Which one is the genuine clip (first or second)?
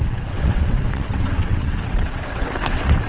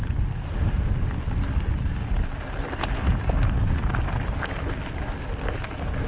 second